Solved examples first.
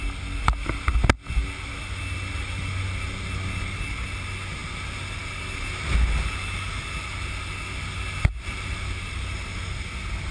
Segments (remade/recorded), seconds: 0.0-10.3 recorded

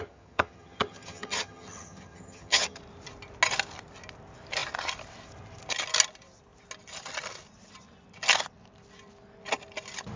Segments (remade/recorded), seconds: 0.0-2.8 remade; 2.8-10.2 recorded